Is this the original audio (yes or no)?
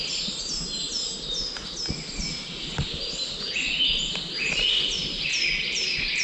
yes